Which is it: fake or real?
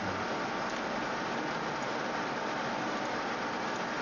real